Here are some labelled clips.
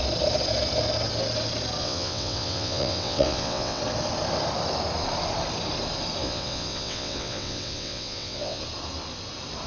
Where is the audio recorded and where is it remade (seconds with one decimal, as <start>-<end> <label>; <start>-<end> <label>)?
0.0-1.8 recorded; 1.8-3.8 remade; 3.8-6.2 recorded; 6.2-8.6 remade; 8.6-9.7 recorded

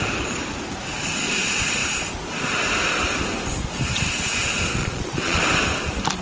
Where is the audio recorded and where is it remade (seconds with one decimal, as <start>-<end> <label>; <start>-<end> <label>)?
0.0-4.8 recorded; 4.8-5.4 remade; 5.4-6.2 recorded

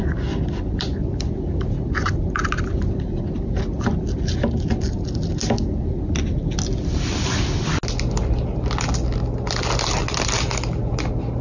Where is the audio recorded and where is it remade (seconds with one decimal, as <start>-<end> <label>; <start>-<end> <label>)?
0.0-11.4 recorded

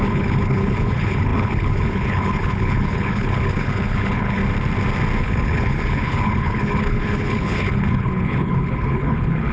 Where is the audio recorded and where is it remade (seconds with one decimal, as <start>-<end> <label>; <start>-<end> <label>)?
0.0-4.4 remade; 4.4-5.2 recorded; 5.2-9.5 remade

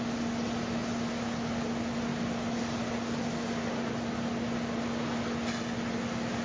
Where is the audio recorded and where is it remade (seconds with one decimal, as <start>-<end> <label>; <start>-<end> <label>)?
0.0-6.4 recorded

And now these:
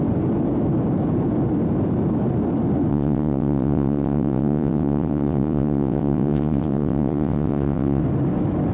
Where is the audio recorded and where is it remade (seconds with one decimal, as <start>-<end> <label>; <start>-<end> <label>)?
0.0-2.9 recorded; 2.9-8.0 remade; 8.0-8.7 recorded